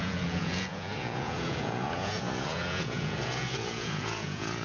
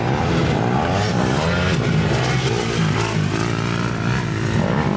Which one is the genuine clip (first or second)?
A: second